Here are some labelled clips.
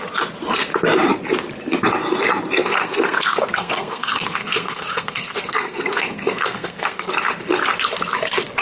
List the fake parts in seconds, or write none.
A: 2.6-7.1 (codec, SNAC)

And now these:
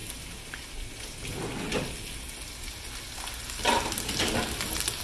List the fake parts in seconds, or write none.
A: none

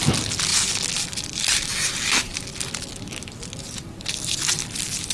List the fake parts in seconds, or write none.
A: none

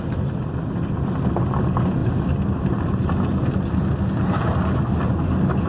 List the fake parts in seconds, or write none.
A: none

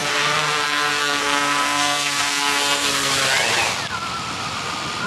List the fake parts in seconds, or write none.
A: 0.0-3.1 (codec, SNAC)

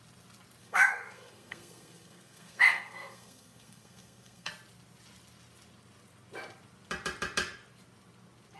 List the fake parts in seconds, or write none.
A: 0.6-4.5 (codec, SNAC)

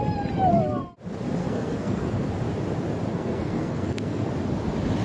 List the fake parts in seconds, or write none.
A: 1.4-2.3 (codec, SNAC); 3.1-4.3